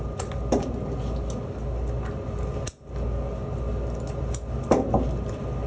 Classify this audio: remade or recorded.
recorded